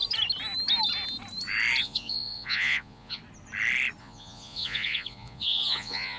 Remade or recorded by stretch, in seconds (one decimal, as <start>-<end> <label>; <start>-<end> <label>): 0.0-1.8 recorded; 1.8-3.2 remade; 3.2-4.0 recorded; 4.0-6.2 remade